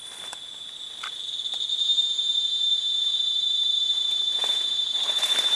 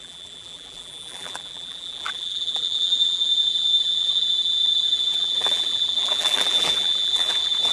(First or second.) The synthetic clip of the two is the second